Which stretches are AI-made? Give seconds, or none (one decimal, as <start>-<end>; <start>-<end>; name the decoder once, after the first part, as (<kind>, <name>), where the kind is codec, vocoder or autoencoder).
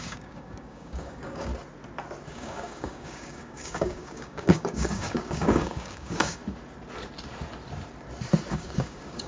0.0-1.5 (codec, DAC); 2.3-6.4; 8.5-9.3